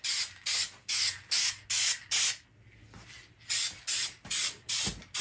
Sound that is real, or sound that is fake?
real